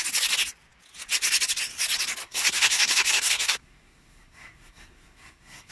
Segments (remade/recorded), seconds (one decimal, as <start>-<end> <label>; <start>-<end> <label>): 0.0-2.2 recorded; 2.2-5.7 remade